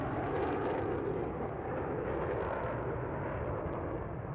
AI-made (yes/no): no